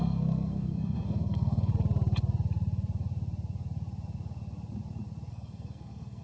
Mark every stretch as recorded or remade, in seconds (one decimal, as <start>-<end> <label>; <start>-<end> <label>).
0.0-1.7 remade; 1.7-5.3 recorded; 5.3-6.2 remade